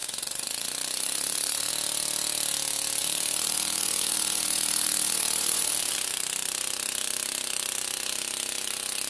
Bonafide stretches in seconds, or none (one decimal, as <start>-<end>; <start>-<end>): 1.7-3.0; 5.7-9.1